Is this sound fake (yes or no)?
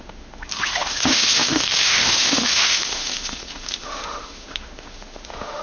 yes